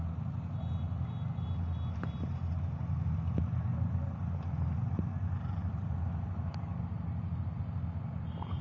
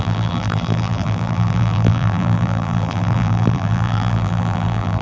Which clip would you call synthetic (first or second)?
second